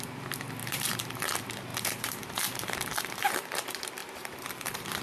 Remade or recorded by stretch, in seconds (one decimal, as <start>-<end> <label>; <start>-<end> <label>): 0.0-0.6 recorded; 0.6-1.2 remade; 1.2-1.7 recorded; 1.7-3.0 remade; 3.0-4.0 recorded; 4.0-5.0 remade